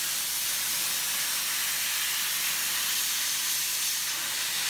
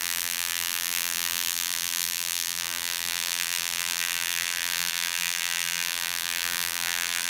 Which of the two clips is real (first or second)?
first